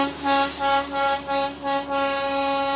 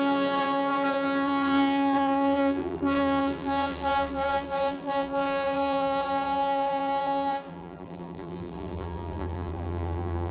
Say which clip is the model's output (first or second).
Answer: second